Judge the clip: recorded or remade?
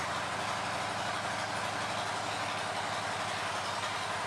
recorded